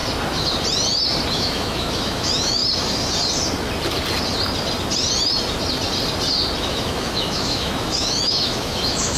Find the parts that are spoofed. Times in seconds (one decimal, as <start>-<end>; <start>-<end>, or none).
1.3-2.6; 6.6-9.2